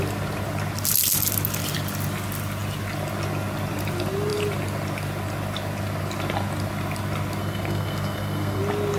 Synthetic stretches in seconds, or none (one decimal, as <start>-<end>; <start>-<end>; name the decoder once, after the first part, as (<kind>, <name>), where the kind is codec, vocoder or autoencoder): 7.4-8.6 (codec, SNAC)